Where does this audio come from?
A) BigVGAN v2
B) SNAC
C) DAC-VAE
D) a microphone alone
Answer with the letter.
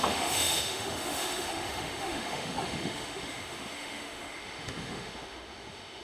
C